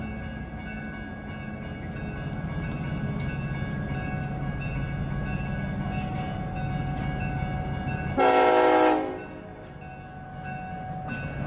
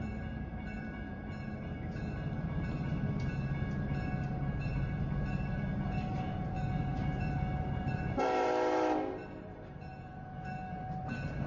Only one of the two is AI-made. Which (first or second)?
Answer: second